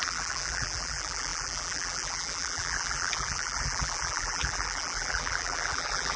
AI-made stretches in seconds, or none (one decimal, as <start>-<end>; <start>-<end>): 0.0-6.2